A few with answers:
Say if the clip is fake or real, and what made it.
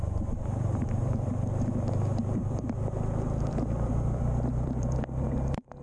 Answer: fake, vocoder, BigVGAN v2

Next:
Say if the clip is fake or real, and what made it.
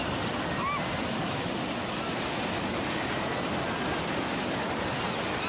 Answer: real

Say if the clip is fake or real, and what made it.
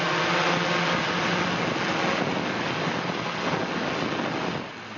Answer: real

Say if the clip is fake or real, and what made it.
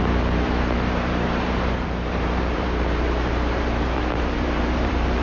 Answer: fake, vocoder, BigVGAN v2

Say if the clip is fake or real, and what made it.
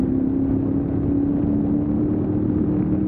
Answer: real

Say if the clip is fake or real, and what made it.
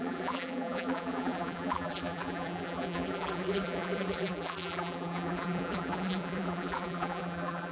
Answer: fake, vocoder, BigVGAN v2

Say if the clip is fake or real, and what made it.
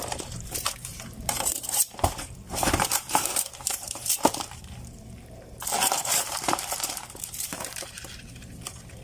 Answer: fake, vocoder, BigVGAN v2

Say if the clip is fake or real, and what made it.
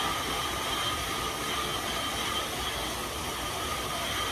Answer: real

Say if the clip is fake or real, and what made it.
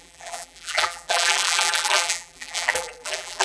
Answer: fake, vocoder, BigVGAN v2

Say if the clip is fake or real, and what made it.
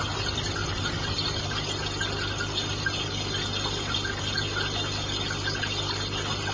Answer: real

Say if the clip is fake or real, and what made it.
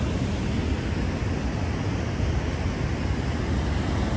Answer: real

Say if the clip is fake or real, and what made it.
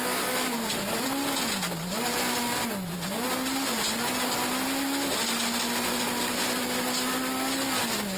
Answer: real